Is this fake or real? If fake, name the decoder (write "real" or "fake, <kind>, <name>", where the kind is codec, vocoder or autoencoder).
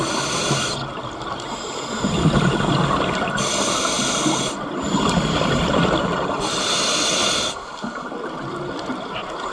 real